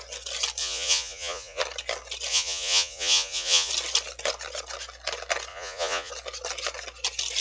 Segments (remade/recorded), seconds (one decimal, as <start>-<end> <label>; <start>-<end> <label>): 0.0-0.6 recorded; 0.6-1.6 remade; 1.6-2.3 recorded; 2.3-3.7 remade; 3.7-5.5 recorded; 5.5-6.1 remade; 6.1-7.4 recorded